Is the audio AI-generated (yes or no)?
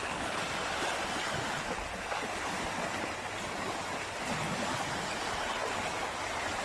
no